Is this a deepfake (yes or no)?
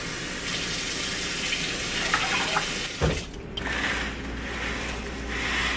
no